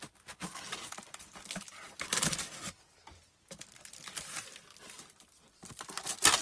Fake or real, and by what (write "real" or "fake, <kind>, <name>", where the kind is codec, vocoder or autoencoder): real